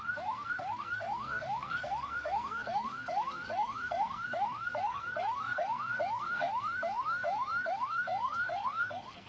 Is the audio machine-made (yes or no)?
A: yes